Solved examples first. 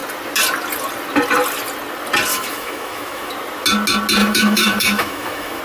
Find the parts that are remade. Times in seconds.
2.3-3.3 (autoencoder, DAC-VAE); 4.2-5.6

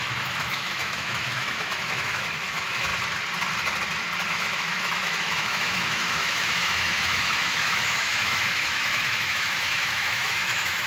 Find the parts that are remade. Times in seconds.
0.0-2.9 (autoencoder, DAC-VAE); 4.3-10.9